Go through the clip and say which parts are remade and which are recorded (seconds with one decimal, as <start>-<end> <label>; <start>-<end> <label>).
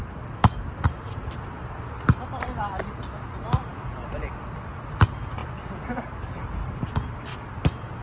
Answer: 0.0-3.7 remade; 3.7-4.3 recorded; 4.3-5.4 remade; 5.4-6.8 recorded; 6.8-7.3 remade; 7.3-8.0 recorded